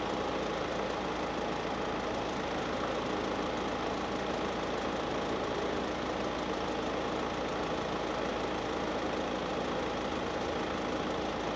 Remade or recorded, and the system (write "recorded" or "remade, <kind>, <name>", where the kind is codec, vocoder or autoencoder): recorded